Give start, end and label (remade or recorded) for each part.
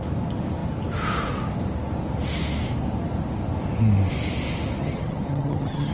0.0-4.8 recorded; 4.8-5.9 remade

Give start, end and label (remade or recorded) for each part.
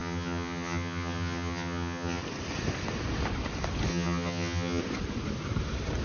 0.0-2.2 remade; 2.2-3.9 recorded; 3.9-4.8 remade; 4.8-6.0 recorded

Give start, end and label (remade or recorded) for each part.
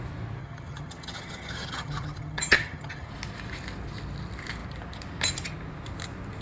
0.0-0.4 recorded; 0.4-3.1 remade; 3.1-6.4 recorded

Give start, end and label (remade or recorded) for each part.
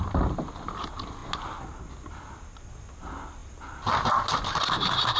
0.0-5.2 recorded